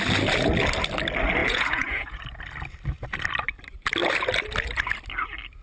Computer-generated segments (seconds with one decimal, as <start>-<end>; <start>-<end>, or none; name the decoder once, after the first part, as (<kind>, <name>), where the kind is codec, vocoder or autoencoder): 1.4-2.2 (vocoder, Vocos)